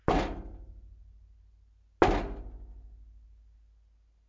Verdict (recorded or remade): recorded